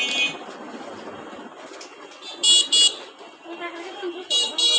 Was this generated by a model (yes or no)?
no